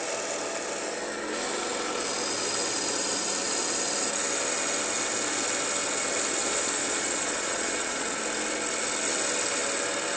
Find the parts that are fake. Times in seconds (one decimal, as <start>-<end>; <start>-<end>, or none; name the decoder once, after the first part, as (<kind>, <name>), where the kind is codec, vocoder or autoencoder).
6.4-8.2 (vocoder, Vocos)